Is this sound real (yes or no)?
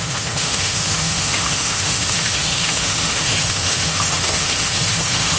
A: no